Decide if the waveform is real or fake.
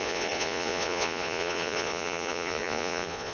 fake